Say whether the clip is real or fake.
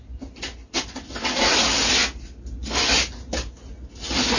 real